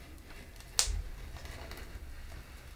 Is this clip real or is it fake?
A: real